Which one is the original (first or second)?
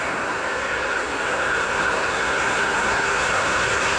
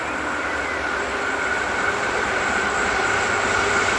second